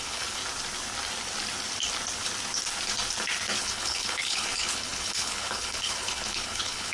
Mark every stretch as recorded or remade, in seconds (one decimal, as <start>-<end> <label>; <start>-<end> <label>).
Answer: 0.0-0.4 remade; 0.4-3.6 recorded; 3.6-6.9 remade